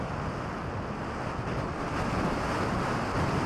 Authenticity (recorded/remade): recorded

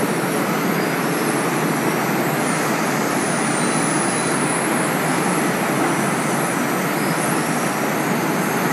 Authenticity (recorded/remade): recorded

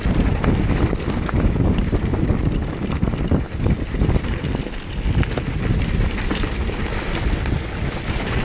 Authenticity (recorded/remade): recorded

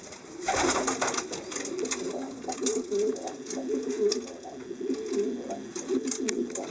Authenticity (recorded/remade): recorded